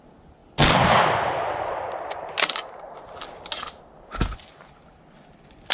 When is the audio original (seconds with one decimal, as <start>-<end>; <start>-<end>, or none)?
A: 0.0-5.7

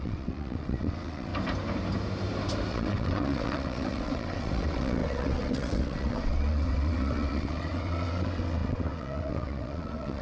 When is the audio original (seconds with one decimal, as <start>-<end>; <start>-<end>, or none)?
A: 1.3-2.7

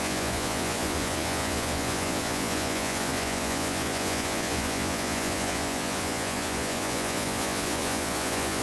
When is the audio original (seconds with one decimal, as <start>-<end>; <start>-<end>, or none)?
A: none

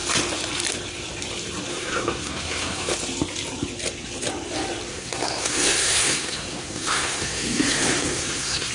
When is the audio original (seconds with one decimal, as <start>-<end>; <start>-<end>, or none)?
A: 0.0-1.7; 2.9-4.9